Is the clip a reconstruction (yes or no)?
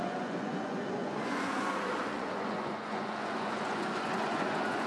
yes